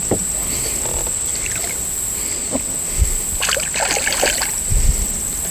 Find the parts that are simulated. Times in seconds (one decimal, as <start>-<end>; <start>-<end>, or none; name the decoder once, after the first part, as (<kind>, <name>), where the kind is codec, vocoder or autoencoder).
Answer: none